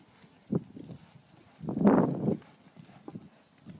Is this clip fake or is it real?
real